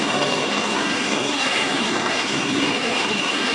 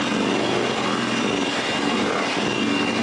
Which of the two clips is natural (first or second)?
second